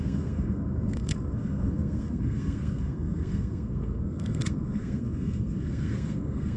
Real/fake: fake